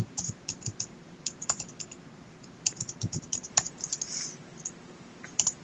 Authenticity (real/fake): fake